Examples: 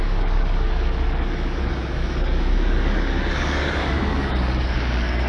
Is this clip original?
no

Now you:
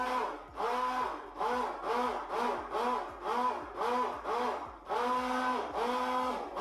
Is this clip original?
yes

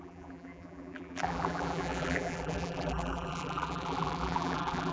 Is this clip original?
no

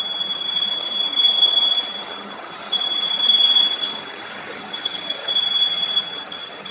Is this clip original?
no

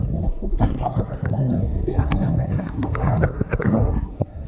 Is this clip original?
no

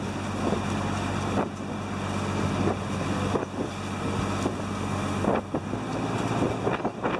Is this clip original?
yes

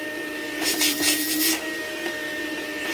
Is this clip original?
yes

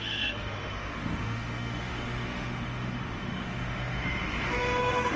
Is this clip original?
no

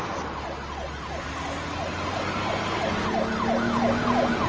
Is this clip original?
yes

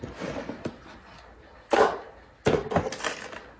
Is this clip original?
yes